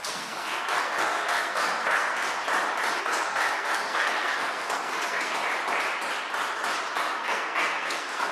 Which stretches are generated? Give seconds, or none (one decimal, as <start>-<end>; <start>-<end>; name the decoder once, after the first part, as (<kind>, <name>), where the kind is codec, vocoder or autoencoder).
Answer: 0.0-2.4 (codec, SNAC); 3.0-5.4; 7.0-8.3